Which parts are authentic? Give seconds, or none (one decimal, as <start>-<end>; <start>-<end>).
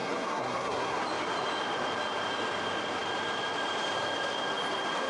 1.0-5.1